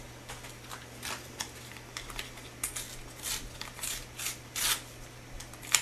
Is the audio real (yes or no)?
yes